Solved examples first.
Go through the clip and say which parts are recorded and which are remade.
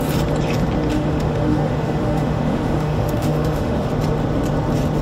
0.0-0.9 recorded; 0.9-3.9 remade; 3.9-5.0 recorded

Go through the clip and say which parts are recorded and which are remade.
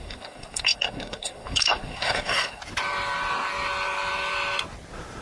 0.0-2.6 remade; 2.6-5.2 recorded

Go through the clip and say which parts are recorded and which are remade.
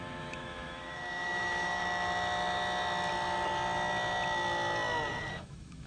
0.0-1.8 remade; 1.8-5.3 recorded; 5.3-5.9 remade